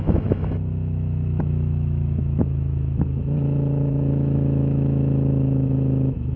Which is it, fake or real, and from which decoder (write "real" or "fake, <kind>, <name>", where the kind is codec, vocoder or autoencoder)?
fake, autoencoder, DAC-VAE